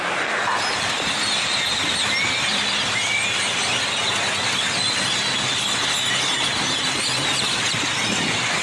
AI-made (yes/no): no